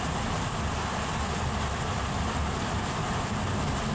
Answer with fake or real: real